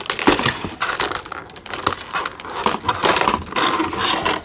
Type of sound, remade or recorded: recorded